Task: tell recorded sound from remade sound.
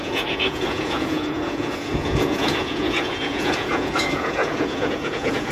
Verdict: remade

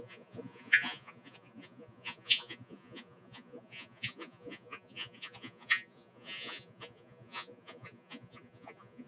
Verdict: remade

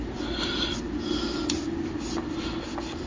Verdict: recorded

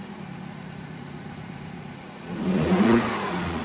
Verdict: remade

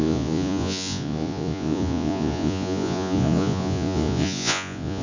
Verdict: remade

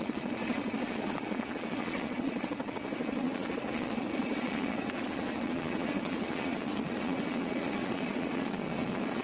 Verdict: remade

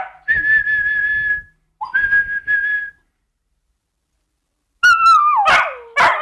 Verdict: recorded